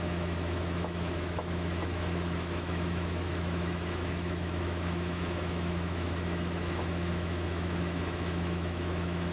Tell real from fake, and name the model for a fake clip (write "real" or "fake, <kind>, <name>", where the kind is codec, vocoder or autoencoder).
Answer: fake, autoencoder, DAC-VAE